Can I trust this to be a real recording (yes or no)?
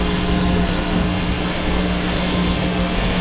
no